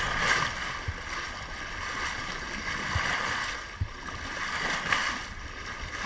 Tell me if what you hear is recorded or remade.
recorded